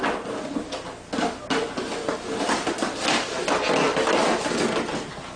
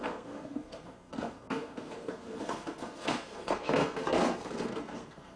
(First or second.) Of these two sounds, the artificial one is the second